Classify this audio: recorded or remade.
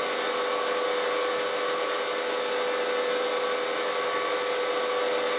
recorded